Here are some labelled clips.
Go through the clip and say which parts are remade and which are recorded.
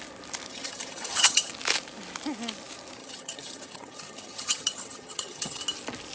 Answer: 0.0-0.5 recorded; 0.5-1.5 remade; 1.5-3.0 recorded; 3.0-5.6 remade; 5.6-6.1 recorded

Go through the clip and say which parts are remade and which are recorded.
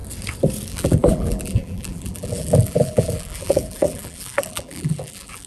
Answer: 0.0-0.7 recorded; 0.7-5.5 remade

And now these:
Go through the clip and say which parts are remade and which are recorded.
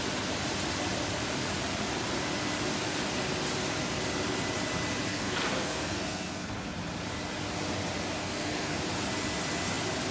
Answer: 0.0-5.1 recorded; 5.1-6.5 remade; 6.5-8.2 recorded; 8.2-8.8 remade; 8.8-10.1 recorded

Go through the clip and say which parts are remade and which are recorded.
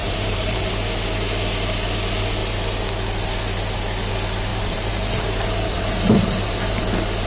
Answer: 0.0-0.7 remade; 0.7-4.5 recorded; 4.5-6.8 remade; 6.8-7.3 recorded